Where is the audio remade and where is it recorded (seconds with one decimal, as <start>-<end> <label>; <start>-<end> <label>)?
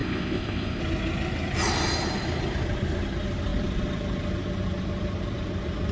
0.0-0.8 remade; 0.8-5.9 recorded